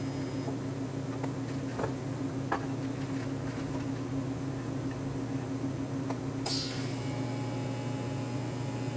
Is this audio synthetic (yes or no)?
no